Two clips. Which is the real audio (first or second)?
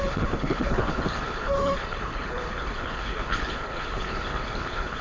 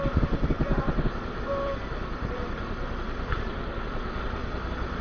second